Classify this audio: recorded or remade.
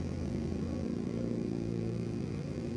remade